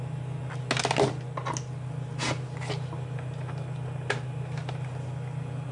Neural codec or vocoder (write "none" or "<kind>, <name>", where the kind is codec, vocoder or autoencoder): none